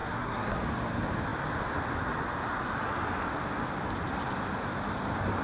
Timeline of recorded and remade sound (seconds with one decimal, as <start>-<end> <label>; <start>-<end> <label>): 0.0-0.6 remade; 0.6-5.4 recorded